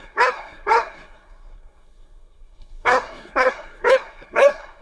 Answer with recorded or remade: remade